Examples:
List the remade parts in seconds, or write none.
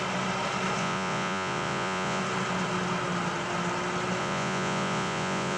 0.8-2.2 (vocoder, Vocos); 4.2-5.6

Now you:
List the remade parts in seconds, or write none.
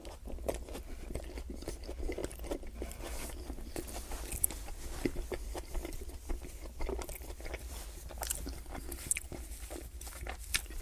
none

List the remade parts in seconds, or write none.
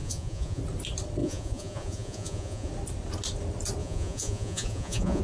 0.0-0.6 (vocoder, Vocos); 1.2-2.7; 3.8-5.2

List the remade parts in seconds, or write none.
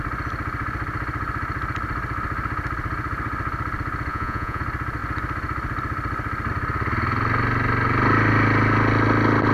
4.1-4.6 (vocoder, Vocos)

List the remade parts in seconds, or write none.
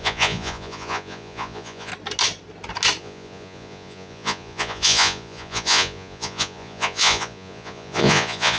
0.0-1.9 (vocoder, Vocos); 3.0-8.6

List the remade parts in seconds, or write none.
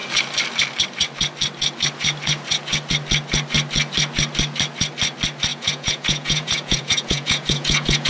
5.5-8.1 (vocoder, Vocos)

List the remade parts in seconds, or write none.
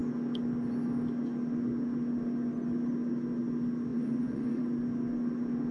3.9-4.6 (vocoder, Vocos)